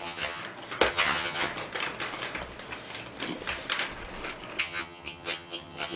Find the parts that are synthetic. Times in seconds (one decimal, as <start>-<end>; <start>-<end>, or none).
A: 0.0-0.4; 0.9-1.5; 4.6-6.0